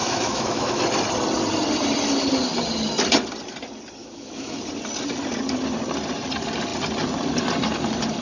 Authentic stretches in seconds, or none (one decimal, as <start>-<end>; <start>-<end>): 0.8-4.0; 4.6-8.2